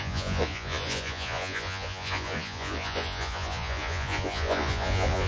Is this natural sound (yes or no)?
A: no